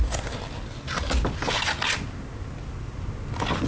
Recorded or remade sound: recorded